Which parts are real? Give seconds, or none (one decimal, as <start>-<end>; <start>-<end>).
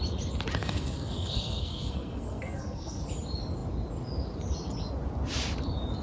0.0-0.6; 3.0-6.0